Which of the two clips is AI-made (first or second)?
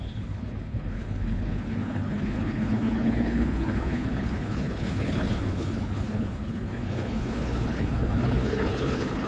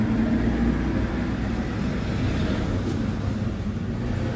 first